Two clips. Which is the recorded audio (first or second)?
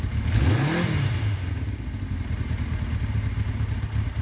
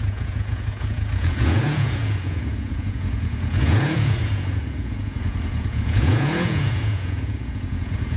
first